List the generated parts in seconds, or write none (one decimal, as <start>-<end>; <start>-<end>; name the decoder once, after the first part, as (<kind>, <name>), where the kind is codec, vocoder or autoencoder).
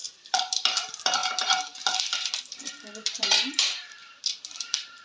0.0-5.0 (vocoder, BigVGAN v2)